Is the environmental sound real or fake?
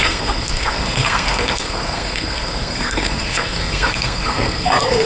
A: fake